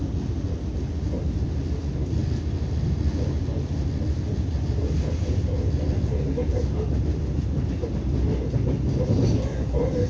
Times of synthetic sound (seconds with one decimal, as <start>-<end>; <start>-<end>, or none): none